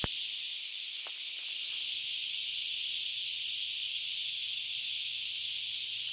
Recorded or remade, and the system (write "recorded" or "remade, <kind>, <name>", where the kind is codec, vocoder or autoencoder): recorded